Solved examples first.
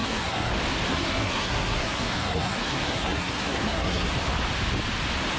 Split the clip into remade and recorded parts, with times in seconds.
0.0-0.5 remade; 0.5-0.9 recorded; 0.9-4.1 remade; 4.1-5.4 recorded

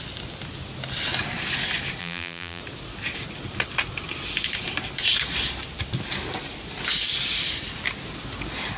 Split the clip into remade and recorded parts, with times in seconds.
0.0-2.0 recorded; 2.0-2.6 remade; 2.6-8.8 recorded

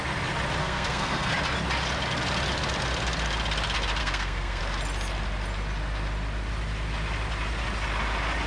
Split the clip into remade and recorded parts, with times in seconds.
0.0-0.6 recorded; 0.6-1.3 remade; 1.3-4.0 recorded; 4.0-4.6 remade; 4.6-8.5 recorded

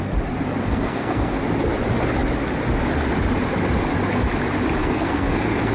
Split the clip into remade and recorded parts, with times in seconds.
0.0-0.6 recorded; 0.6-1.4 remade; 1.4-4.8 recorded; 4.8-5.7 remade

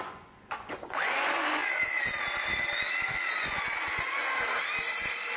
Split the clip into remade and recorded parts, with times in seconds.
0.0-1.6 remade; 1.6-3.4 recorded; 3.4-4.2 remade; 4.2-5.4 recorded

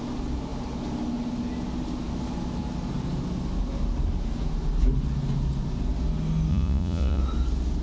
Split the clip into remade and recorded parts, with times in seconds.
0.0-6.5 recorded; 6.5-7.2 remade; 7.2-7.8 recorded

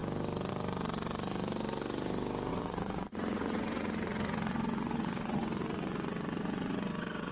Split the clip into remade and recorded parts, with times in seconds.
0.0-2.5 recorded; 2.5-7.3 remade